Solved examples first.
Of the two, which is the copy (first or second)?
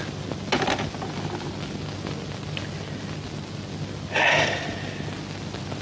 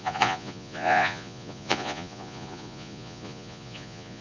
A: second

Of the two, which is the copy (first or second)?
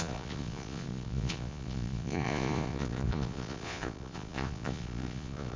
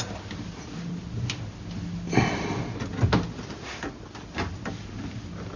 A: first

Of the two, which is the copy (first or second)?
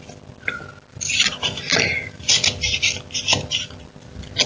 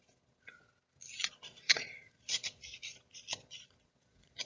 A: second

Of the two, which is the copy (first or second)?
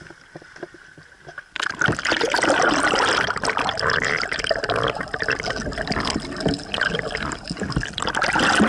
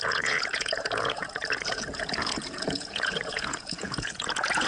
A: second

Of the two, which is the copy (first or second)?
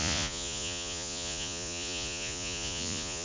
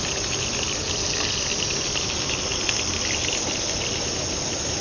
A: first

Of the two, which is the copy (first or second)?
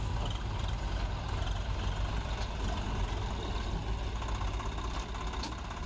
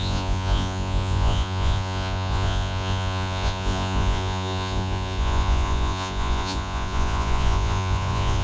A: second